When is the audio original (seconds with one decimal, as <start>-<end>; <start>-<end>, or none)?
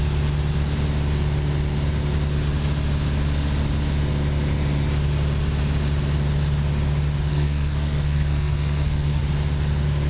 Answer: 0.0-7.3; 9.2-10.1